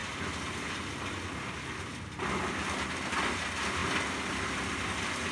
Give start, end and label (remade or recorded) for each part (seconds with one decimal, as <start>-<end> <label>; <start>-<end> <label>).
0.0-5.3 recorded